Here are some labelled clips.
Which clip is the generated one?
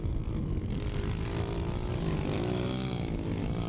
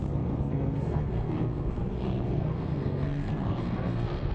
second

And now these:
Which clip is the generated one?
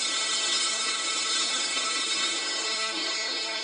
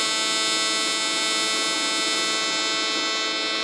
first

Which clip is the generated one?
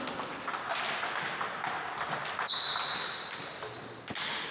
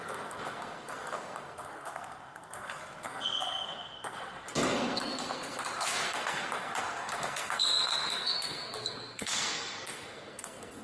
second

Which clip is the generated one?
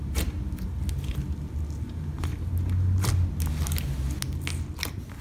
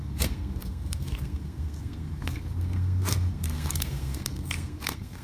second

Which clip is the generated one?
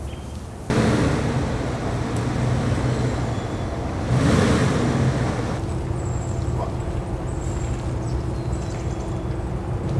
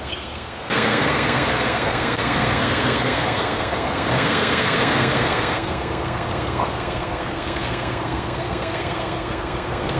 second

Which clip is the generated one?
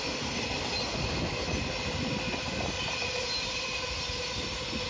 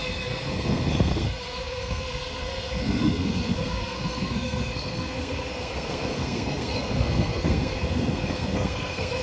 second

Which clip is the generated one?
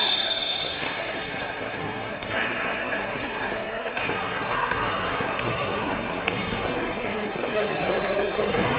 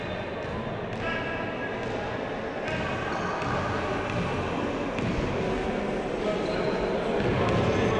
first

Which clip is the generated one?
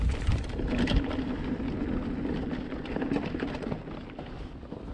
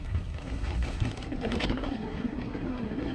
second